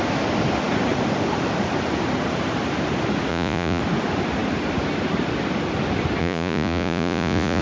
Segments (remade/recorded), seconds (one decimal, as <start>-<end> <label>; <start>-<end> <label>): 0.0-3.3 recorded; 3.3-3.8 remade; 3.8-6.2 recorded; 6.2-7.6 remade